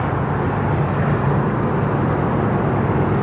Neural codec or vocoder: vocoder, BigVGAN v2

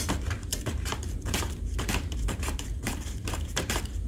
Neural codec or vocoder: vocoder, BigVGAN v2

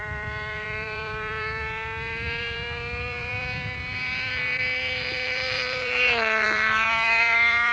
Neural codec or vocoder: vocoder, BigVGAN v2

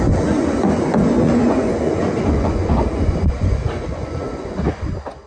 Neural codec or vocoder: vocoder, Vocos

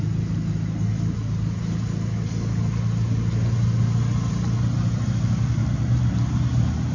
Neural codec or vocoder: none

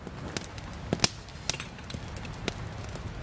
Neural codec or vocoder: none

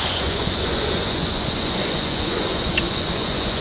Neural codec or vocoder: vocoder, Vocos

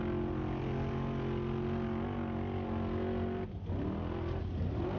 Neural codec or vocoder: none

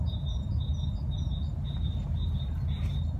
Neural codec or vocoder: none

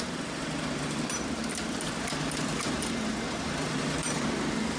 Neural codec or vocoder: vocoder, BigVGAN v2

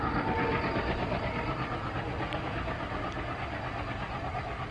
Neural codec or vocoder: none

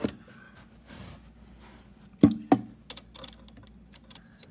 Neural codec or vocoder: none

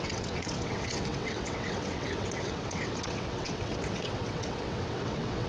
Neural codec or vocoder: vocoder, WaveNeXt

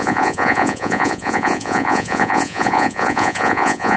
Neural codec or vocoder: vocoder, Vocos